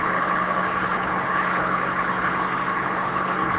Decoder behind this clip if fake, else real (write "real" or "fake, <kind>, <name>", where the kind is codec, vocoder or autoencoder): fake, codec, HILCodec